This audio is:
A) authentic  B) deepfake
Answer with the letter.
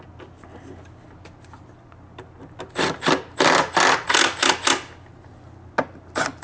A